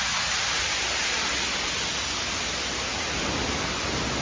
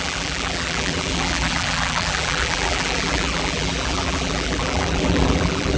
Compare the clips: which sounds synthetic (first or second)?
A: second